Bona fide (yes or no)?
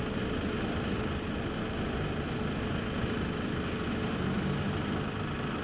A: yes